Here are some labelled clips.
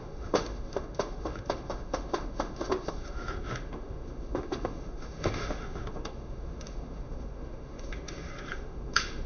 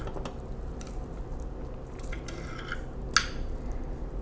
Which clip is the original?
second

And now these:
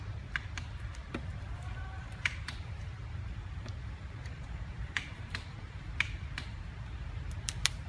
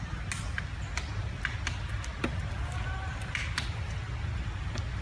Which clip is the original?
second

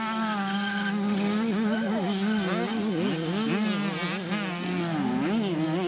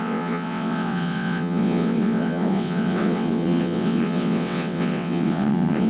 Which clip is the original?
first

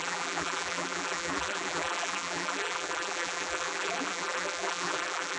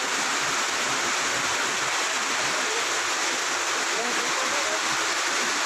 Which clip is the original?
second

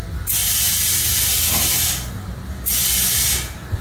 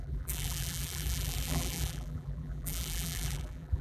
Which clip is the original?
first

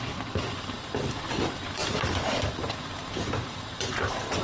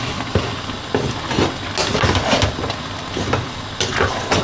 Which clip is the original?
second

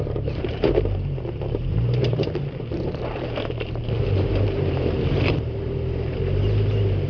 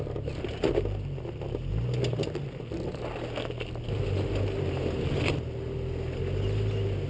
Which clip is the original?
second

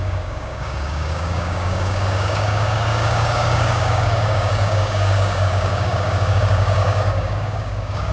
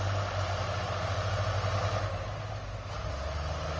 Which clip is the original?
second